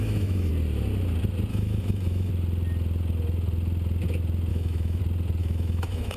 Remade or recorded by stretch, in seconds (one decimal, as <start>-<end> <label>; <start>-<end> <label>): 0.0-0.5 remade; 0.5-1.5 recorded; 1.5-2.3 remade; 2.3-4.5 recorded; 4.5-5.0 remade; 5.0-5.4 recorded; 5.4-6.2 remade